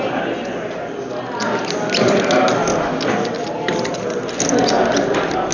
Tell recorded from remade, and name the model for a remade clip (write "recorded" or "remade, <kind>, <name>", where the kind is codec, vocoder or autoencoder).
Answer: recorded